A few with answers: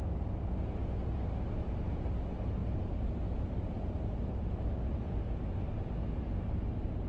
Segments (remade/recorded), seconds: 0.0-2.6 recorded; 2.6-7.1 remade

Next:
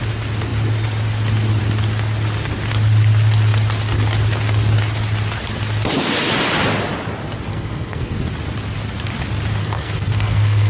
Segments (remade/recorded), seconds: 0.0-7.5 recorded; 7.5-8.2 remade; 8.2-9.6 recorded; 9.6-10.7 remade